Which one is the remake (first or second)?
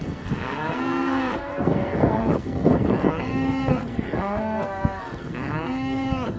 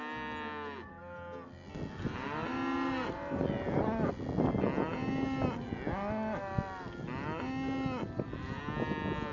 first